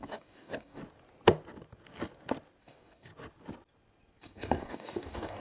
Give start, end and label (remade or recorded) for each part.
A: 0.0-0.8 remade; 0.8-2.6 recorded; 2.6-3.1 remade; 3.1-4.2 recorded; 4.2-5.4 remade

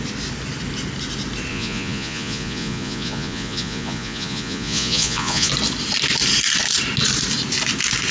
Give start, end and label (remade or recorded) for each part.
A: 0.0-1.5 recorded; 1.5-5.5 remade; 5.5-8.1 recorded

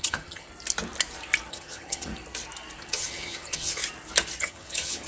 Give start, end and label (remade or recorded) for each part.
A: 0.0-0.5 remade; 0.5-1.5 recorded; 1.5-2.1 remade; 2.1-2.8 recorded; 2.8-3.8 remade; 3.8-4.4 recorded; 4.4-5.1 remade